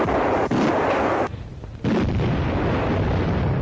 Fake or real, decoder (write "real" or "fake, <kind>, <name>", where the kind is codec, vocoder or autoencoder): real